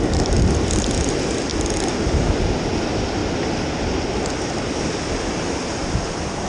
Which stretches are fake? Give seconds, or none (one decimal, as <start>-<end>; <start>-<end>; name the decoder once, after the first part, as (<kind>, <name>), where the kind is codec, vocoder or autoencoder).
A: none